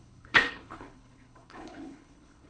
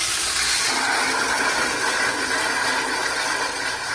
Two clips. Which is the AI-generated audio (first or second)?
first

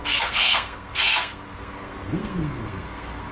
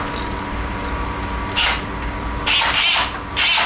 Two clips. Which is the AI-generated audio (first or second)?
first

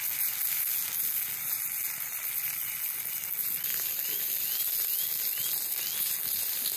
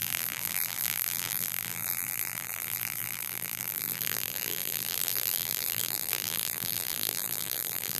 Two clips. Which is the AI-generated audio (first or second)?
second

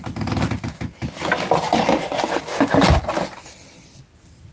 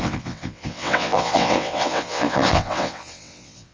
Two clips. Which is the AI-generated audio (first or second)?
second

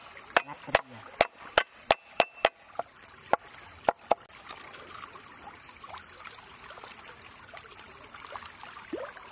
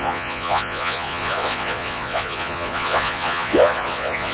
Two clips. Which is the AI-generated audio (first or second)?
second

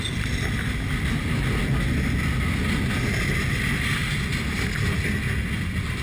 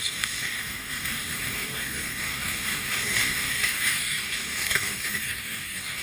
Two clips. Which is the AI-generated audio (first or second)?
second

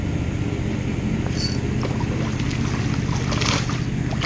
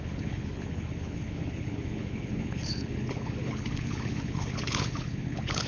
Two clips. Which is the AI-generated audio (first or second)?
second